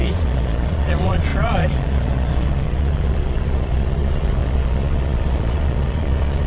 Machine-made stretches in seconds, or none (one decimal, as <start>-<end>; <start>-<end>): 0.0-6.5